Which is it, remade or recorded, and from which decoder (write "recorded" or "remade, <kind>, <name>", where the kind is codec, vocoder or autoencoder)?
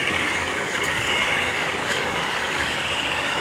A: remade, codec, DAC